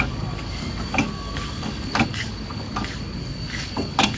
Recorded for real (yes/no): no